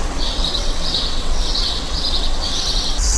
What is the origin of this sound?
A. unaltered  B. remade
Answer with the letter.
B